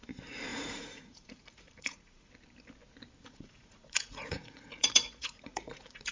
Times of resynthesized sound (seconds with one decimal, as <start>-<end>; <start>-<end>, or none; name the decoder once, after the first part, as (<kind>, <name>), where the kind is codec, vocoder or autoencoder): 0.5-2.3 (vocoder, Vocos); 3.2-6.1